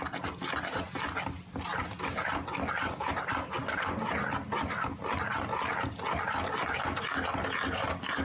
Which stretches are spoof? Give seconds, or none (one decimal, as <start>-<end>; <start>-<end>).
none